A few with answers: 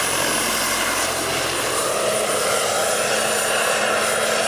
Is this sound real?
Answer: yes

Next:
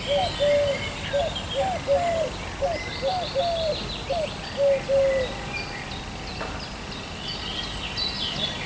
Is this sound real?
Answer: yes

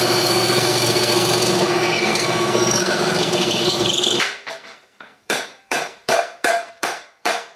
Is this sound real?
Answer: no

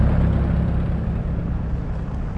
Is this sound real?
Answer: yes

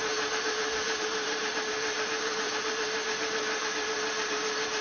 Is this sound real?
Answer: no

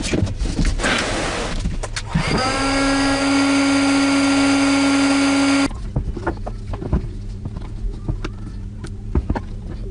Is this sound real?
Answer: yes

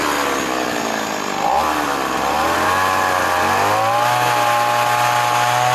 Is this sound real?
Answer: yes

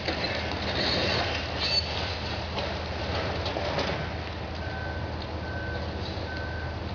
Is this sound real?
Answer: yes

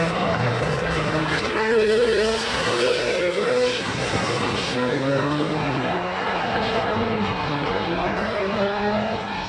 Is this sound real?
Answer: no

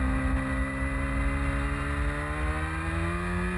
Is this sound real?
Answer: yes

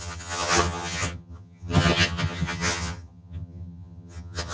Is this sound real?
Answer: no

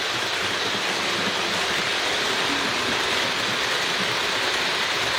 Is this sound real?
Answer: yes